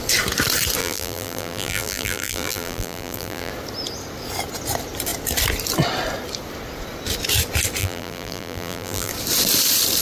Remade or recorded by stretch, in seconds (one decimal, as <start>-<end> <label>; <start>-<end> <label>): 0.0-0.8 recorded; 0.8-3.5 remade; 3.5-7.8 recorded; 7.8-9.1 remade; 9.1-10.0 recorded